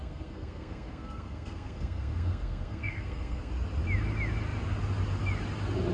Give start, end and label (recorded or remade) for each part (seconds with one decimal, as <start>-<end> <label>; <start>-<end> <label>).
0.0-3.5 remade; 3.5-5.9 recorded

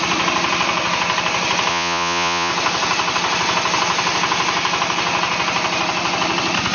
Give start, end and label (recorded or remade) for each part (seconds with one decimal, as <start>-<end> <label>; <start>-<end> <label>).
0.0-1.7 recorded; 1.7-2.5 remade; 2.5-6.7 recorded